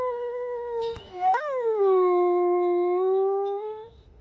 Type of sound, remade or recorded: remade